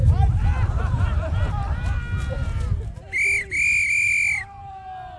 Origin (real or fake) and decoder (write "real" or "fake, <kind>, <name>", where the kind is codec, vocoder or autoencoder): real